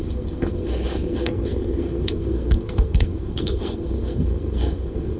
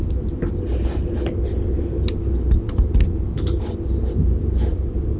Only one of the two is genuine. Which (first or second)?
second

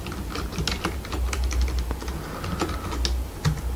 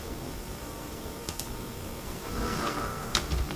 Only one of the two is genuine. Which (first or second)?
first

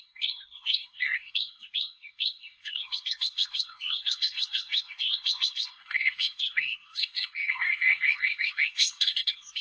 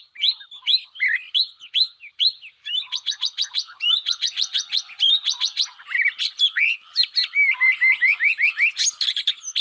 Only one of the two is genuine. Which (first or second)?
second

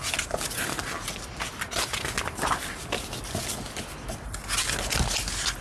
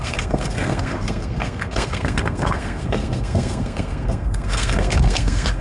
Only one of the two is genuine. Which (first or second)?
first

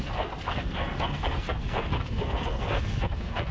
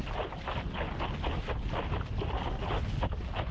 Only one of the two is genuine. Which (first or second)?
second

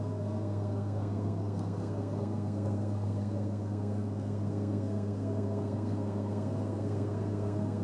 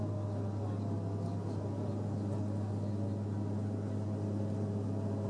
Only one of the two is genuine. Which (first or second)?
second